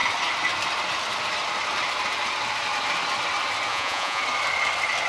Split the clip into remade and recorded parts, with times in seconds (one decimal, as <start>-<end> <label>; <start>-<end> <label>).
0.0-3.7 recorded; 3.7-4.2 remade; 4.2-5.1 recorded